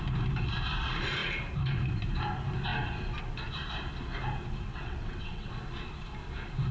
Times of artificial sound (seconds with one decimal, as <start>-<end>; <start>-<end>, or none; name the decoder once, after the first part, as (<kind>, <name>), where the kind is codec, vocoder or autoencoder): 4.7-5.5 (vocoder, WaveNeXt)